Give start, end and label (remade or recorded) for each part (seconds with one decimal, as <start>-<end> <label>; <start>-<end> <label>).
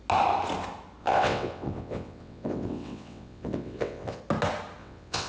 0.0-1.0 recorded; 1.0-4.2 remade; 4.2-4.8 recorded; 4.8-5.3 remade